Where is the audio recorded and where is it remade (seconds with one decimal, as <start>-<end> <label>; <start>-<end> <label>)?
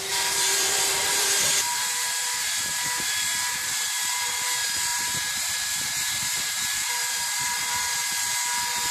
0.0-8.0 remade; 8.0-8.9 recorded